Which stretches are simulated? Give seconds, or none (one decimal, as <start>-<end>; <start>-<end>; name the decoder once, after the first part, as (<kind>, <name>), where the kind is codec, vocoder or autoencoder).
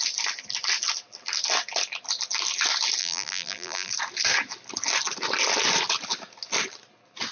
3.0-3.9 (vocoder, BigVGAN v2)